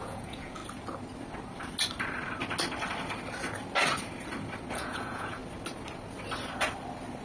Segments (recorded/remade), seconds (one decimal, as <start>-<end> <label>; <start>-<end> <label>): 0.0-0.6 remade; 0.6-4.7 recorded; 4.7-5.4 remade; 5.4-7.2 recorded